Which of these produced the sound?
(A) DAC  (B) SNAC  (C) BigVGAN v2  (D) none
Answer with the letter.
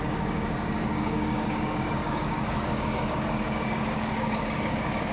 A